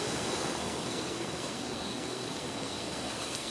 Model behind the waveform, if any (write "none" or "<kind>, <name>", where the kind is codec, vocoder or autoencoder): codec, SNAC